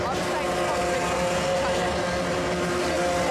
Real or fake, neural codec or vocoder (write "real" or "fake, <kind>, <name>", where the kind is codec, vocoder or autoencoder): real